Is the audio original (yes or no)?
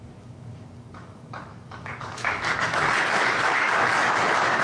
no